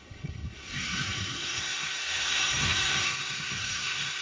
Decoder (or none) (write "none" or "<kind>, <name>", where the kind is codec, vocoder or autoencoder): codec, SNAC